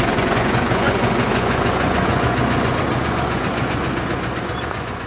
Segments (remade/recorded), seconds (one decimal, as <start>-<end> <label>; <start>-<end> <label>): 0.0-5.1 remade